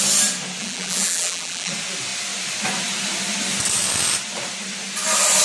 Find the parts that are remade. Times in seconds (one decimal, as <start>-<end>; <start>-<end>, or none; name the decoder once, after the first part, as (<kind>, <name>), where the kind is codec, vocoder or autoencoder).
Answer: 0.6-1.7 (vocoder, BigVGAN v2)